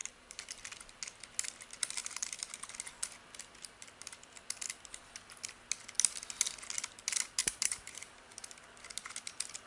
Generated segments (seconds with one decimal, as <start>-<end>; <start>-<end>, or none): 0.0-0.5; 2.0-2.7; 7.4-8.5